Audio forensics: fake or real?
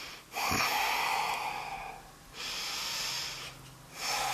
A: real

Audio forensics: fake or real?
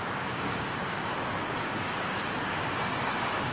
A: fake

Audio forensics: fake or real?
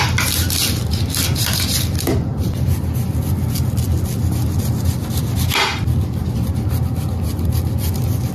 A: real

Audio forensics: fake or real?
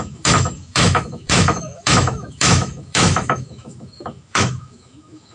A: fake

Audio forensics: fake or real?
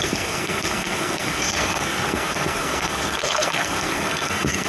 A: fake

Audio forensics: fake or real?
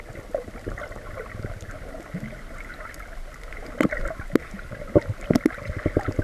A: real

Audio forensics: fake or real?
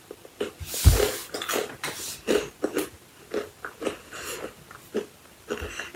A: real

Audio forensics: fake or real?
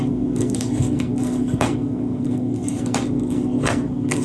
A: fake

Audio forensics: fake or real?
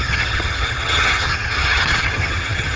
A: fake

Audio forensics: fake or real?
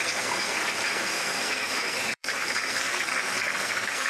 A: fake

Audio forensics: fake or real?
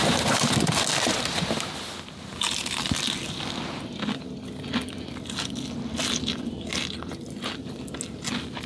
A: real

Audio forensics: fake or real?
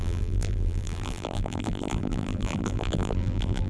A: fake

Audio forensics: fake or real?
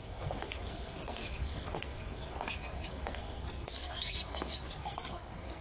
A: fake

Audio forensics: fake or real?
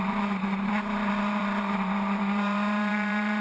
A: fake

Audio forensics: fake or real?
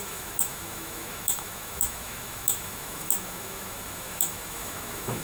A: fake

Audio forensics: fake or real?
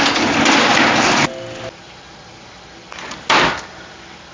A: real